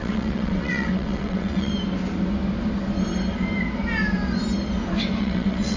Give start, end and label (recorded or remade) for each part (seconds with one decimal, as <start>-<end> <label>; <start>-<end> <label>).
0.0-1.7 remade; 1.7-5.2 recorded; 5.2-5.8 remade